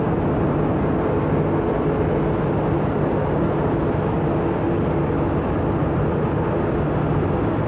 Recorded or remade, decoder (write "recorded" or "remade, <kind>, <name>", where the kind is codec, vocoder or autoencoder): recorded